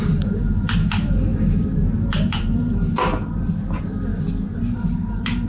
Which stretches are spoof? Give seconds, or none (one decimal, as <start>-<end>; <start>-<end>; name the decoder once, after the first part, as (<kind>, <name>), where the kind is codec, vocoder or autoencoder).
0.0-4.1 (vocoder, BigVGAN v2); 4.6-5.5